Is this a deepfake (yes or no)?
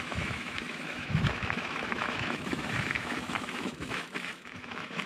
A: yes